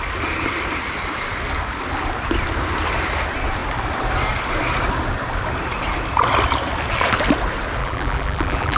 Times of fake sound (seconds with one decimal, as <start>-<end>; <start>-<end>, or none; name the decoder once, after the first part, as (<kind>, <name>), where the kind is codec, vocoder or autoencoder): 7.8-8.8 (vocoder, BigVGAN v2)